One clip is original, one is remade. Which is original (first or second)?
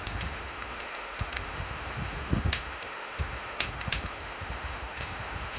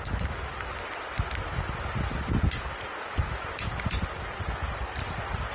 second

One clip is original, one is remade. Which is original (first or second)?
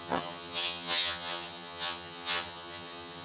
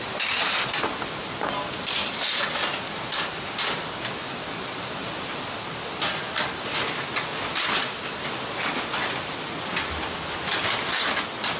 second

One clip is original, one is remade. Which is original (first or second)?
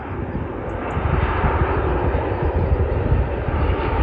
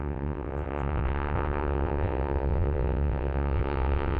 first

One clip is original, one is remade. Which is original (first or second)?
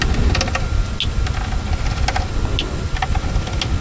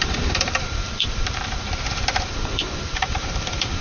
first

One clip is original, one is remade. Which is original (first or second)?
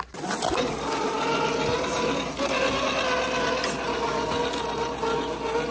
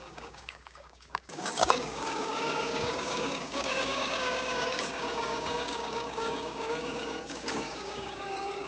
first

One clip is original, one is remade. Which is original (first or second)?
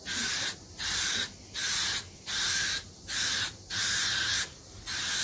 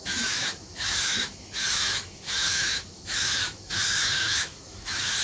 first